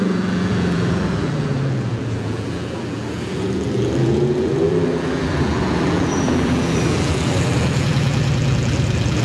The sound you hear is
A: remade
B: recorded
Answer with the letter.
A